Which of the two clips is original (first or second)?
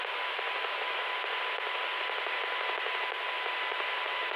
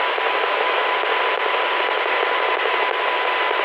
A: first